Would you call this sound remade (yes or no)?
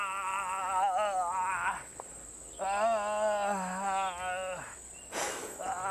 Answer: no